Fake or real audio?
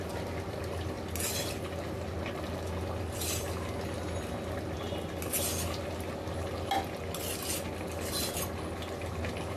real